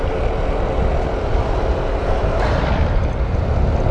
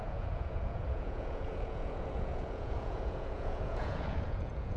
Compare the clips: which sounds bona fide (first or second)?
first